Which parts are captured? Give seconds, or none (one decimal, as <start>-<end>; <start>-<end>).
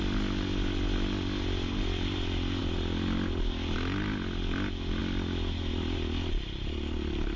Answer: 0.0-7.4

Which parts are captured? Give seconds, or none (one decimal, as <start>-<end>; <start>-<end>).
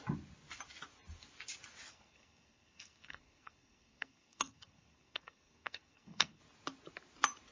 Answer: 0.0-1.9; 6.4-7.5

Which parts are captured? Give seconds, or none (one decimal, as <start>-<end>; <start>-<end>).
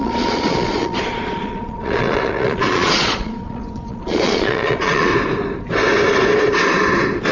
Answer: 5.1-7.3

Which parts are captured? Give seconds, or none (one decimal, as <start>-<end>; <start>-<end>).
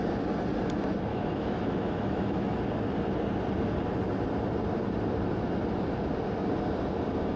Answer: 0.0-1.1; 2.6-7.4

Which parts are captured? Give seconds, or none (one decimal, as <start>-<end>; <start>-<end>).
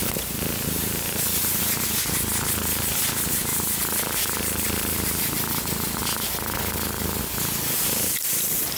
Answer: 1.8-3.5; 7.4-8.8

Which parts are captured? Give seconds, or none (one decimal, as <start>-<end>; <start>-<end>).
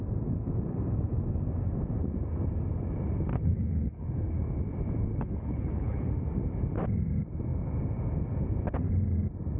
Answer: 0.0-3.3; 4.4-5.1; 6.1-9.6